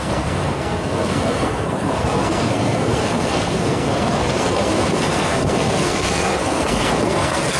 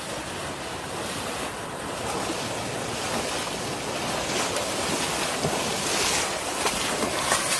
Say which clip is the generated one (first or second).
first